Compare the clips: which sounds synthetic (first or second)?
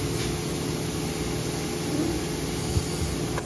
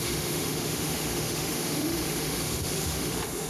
second